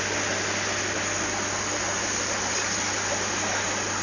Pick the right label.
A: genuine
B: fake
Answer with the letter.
A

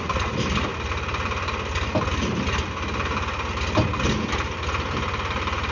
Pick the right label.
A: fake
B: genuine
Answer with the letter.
B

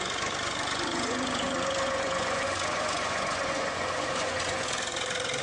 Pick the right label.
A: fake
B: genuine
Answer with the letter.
A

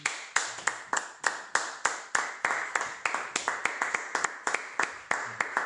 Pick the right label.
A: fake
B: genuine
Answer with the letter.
B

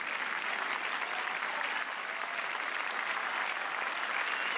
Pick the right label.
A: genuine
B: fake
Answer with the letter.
A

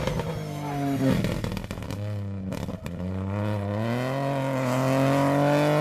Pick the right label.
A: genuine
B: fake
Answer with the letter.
A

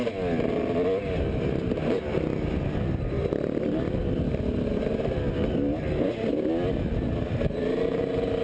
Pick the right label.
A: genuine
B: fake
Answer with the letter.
A